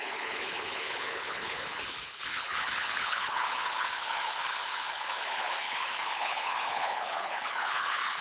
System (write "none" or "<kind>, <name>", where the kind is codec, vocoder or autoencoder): codec, HILCodec